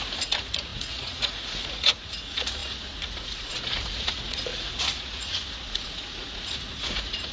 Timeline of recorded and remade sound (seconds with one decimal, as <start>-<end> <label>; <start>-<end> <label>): 0.0-7.3 remade